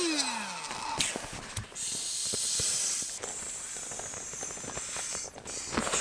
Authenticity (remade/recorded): recorded